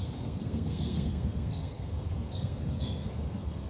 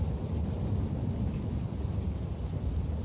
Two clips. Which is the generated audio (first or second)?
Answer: first